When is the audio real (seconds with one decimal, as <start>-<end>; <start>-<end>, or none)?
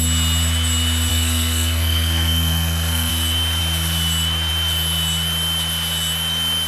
0.0-1.1; 3.1-6.7